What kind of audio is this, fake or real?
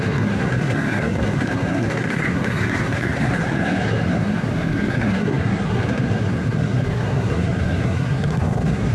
fake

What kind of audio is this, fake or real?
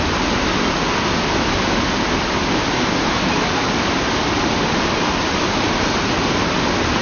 real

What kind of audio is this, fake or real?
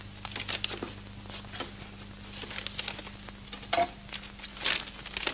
real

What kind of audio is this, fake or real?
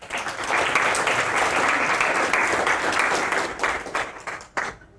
real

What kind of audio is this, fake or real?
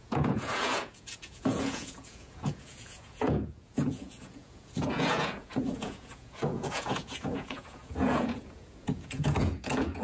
fake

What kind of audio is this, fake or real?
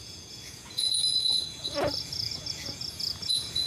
fake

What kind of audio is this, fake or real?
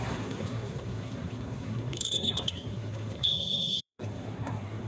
fake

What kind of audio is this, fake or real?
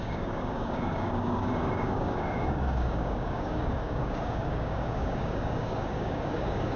fake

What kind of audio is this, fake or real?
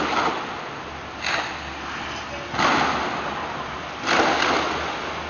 real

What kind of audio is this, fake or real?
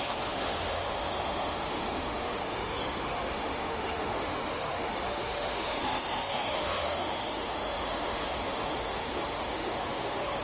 fake